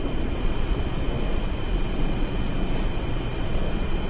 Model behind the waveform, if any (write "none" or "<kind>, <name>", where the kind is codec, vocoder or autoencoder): vocoder, Vocos